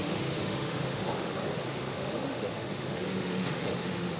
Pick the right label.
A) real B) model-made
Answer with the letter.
B